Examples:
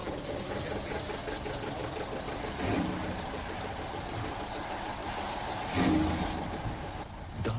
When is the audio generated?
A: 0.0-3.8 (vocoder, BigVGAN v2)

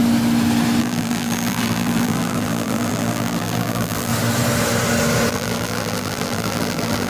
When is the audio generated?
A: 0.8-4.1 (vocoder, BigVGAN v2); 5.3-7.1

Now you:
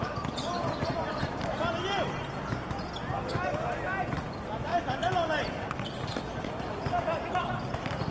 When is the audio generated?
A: none

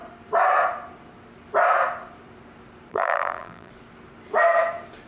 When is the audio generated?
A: 2.9-3.7 (vocoder, BigVGAN v2)

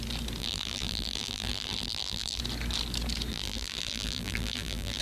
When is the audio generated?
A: 0.4-2.4 (vocoder, BigVGAN v2); 3.3-5.0

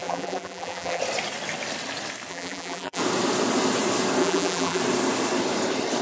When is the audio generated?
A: 0.0-1.0 (vocoder, BigVGAN v2); 2.3-3.0; 4.2-4.8